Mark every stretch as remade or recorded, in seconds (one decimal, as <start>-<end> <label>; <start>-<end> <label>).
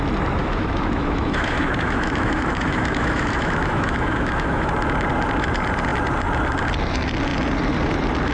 0.0-0.4 recorded; 0.4-4.7 remade; 4.7-8.3 recorded